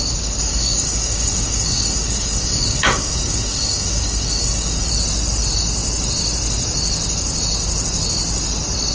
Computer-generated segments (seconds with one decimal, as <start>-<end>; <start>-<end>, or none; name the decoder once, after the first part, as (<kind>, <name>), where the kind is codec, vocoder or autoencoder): 0.5-4.9 (codec, DAC)